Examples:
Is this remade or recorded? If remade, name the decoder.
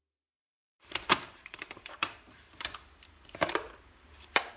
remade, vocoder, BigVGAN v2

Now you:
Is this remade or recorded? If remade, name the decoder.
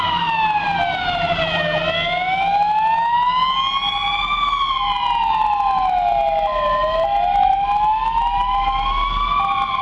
recorded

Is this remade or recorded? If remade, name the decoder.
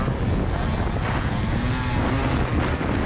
recorded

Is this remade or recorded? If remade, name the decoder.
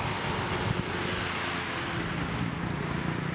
recorded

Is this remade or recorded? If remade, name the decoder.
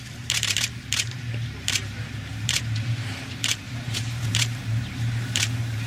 remade, vocoder, BigVGAN v2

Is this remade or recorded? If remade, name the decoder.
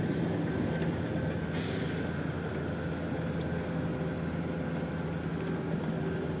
recorded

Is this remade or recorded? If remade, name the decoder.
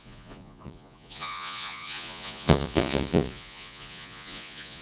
remade, vocoder, Vocos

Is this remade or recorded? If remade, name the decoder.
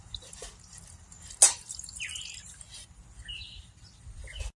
recorded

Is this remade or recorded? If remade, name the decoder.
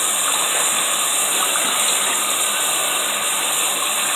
recorded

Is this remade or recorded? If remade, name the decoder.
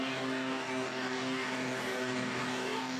remade, codec, DAC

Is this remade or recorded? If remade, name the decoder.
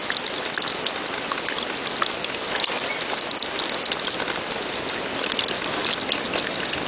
recorded